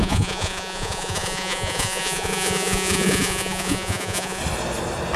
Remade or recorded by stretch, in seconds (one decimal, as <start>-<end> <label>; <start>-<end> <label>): 0.0-4.4 remade; 4.4-5.2 recorded